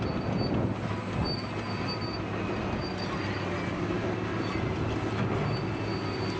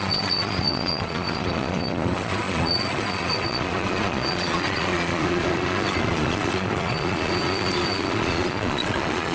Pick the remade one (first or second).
second